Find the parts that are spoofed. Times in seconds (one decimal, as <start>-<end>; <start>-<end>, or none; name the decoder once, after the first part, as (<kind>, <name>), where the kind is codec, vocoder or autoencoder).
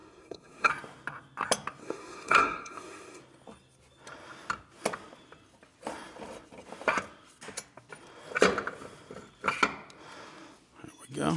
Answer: 0.0-0.7 (codec, SNAC); 1.8-3.2